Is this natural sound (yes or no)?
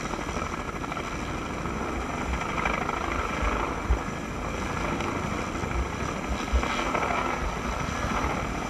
yes